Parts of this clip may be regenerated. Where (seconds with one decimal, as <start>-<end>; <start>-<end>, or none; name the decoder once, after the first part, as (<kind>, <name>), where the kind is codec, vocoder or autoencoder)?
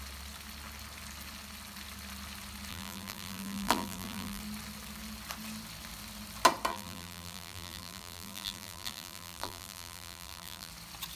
2.7-4.4 (vocoder, BigVGAN v2); 6.7-10.7